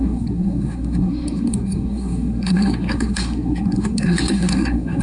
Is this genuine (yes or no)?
no